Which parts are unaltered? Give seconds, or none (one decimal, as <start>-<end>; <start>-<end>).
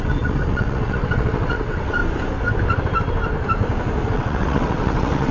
2.0-4.1